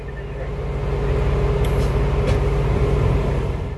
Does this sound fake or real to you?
real